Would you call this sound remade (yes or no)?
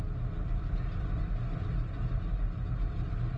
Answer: no